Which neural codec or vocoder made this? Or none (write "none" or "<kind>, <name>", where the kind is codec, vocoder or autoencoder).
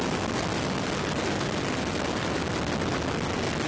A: none